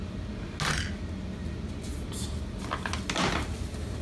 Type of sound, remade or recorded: recorded